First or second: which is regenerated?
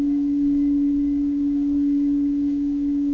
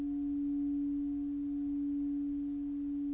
first